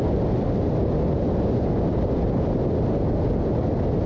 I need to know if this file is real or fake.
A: real